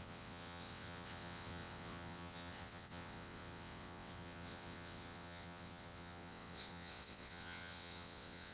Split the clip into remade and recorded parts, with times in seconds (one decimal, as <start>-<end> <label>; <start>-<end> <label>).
0.0-8.5 remade